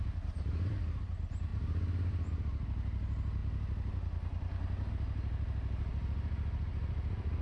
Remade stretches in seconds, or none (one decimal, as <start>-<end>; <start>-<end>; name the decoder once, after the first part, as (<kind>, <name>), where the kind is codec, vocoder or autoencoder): 0.0-1.5 (vocoder, BigVGAN v2); 2.1-3.4; 4.9-7.4